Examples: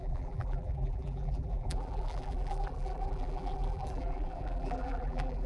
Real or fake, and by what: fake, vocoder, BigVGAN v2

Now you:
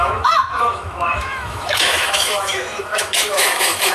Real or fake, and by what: fake, autoencoder, DAC-VAE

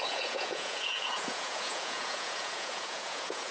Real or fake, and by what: fake, vocoder, Vocos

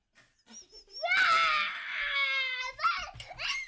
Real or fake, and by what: real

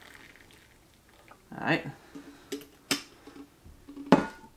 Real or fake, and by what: real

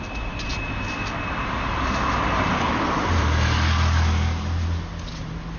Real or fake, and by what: real